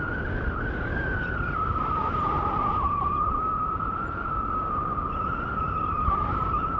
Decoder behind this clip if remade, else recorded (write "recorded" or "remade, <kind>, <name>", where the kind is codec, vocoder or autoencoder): recorded